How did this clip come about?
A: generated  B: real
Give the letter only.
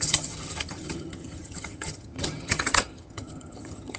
A